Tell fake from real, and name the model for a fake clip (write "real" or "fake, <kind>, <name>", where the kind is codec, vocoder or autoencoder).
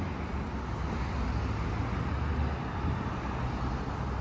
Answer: real